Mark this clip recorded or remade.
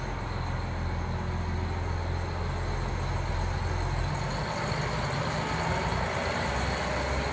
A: recorded